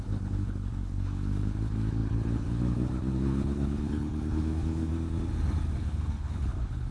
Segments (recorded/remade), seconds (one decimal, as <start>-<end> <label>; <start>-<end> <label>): 0.0-4.9 remade; 4.9-5.8 recorded; 5.8-6.9 remade